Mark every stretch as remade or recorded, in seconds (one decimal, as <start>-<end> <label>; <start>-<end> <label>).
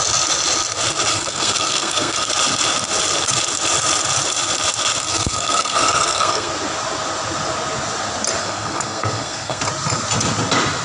0.0-1.1 recorded; 1.1-2.3 remade; 2.3-5.1 recorded; 5.1-6.5 remade; 6.5-8.4 recorded; 8.4-9.6 remade; 9.6-10.8 recorded